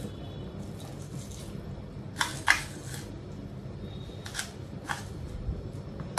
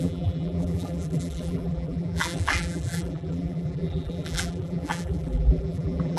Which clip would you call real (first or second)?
first